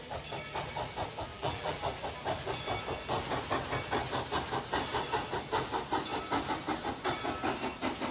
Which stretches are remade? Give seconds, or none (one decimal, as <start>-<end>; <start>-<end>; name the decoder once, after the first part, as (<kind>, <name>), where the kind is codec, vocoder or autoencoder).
1.3-1.8 (vocoder, BigVGAN v2)